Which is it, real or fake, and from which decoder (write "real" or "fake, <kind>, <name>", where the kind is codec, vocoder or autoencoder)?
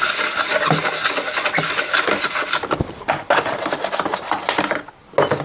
real